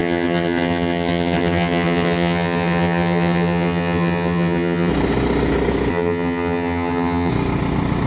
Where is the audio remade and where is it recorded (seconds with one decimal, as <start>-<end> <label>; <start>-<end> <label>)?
0.0-4.9 remade; 4.9-5.9 recorded; 5.9-7.3 remade; 7.3-8.1 recorded